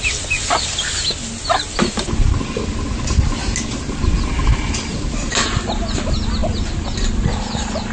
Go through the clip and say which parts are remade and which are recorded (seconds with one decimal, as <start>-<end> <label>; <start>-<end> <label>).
0.0-7.9 recorded